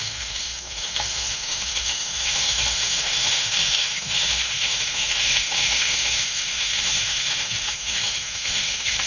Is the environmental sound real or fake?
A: fake